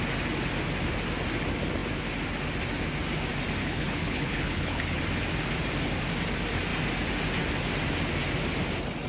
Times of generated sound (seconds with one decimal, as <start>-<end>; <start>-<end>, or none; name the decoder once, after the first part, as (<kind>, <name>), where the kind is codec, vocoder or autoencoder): 3.6-5.0 (codec, HILCodec)